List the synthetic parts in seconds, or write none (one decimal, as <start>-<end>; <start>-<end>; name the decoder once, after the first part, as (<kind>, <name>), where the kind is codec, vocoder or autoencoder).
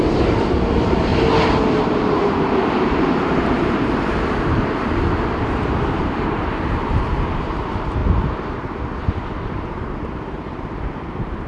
0.0-1.1 (vocoder, BigVGAN v2); 1.7-8.0; 9.5-11.5